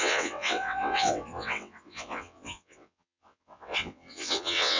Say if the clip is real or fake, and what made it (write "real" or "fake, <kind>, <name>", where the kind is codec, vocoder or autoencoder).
fake, vocoder, WaveNeXt